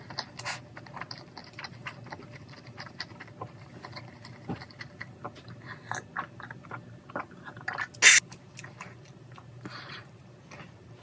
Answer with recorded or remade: recorded